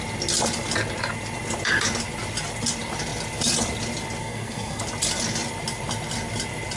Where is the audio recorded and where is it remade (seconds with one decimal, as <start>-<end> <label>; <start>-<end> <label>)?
0.0-4.2 recorded; 4.2-4.8 remade; 4.8-6.8 recorded